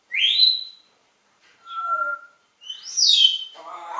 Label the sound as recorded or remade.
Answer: remade